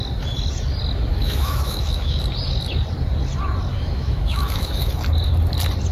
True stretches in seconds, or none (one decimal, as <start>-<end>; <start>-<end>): 0.0-1.1; 2.2-3.7; 4.9-5.9